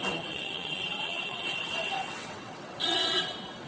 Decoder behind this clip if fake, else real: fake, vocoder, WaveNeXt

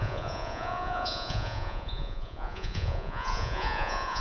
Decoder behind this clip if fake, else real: fake, vocoder, Vocos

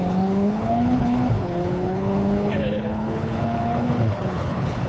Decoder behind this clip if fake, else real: fake, codec, HILCodec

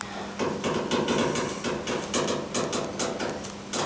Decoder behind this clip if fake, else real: real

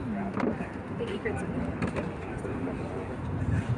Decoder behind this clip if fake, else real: fake, vocoder, BigVGAN v2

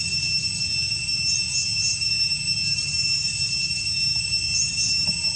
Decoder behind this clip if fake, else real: real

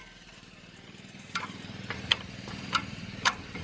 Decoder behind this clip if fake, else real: fake, vocoder, BigVGAN v2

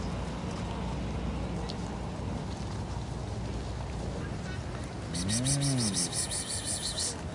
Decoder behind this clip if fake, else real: real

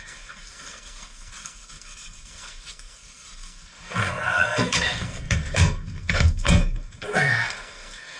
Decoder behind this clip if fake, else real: fake, codec, SNAC